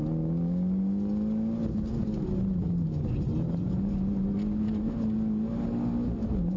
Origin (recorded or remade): recorded